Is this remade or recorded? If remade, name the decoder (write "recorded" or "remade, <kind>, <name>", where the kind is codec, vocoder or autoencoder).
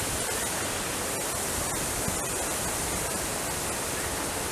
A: recorded